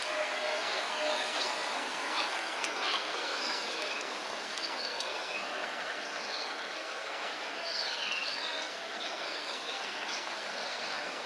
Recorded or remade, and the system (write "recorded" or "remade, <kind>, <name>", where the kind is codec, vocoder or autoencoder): remade, codec, SNAC